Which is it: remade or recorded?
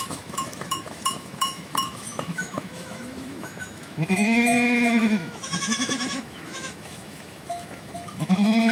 remade